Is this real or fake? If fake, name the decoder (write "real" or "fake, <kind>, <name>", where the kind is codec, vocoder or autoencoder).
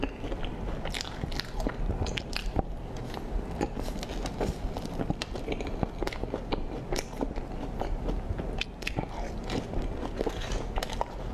real